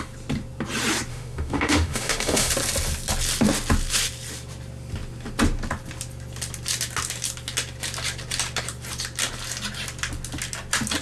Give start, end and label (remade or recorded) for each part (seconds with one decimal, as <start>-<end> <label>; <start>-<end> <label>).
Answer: 0.0-1.1 recorded; 1.1-2.5 remade; 2.5-11.0 recorded